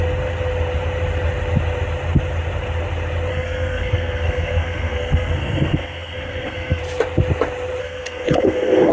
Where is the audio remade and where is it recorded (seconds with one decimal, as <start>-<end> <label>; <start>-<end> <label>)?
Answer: 0.0-3.3 recorded; 3.3-6.8 remade; 6.8-7.8 recorded; 7.8-8.9 remade